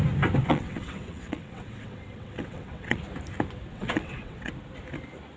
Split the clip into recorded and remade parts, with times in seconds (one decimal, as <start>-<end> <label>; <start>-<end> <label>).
0.0-0.4 recorded; 0.4-3.0 remade; 3.0-3.7 recorded; 3.7-4.5 remade; 4.5-5.4 recorded